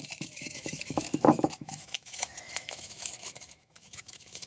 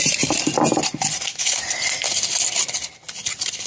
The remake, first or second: first